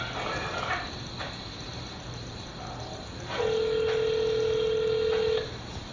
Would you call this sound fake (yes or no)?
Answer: no